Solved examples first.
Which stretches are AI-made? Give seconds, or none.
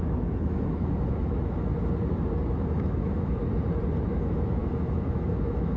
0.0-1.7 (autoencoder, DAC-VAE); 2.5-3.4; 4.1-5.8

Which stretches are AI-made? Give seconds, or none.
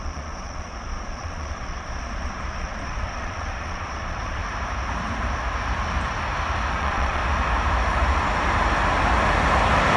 0.0-4.4 (vocoder, Vocos); 6.7-7.2